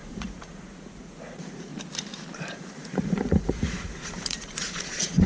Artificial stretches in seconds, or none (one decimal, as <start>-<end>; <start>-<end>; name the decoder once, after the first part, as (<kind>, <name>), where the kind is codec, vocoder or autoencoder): 0.0-1.7 (vocoder, Vocos); 2.5-5.3